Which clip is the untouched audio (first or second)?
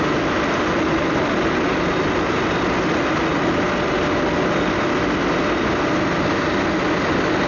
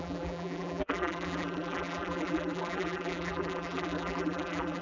first